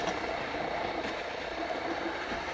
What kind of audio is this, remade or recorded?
recorded